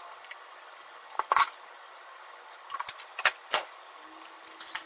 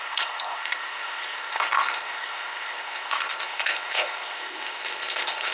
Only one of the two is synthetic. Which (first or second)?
second